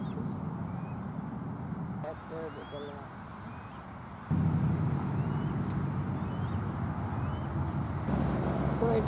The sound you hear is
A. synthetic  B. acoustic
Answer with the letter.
B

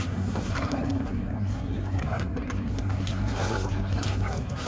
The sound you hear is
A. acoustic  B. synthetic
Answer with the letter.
B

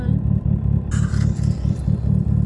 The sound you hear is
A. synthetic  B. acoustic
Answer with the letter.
B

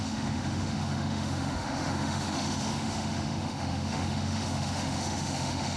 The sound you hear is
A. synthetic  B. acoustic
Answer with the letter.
A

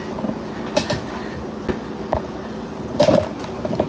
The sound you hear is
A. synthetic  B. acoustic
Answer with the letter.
B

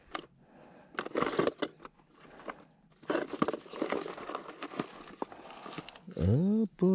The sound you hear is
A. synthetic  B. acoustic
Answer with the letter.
B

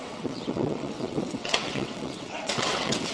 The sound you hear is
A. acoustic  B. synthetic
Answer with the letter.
B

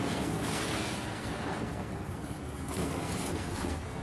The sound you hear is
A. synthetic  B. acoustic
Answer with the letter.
A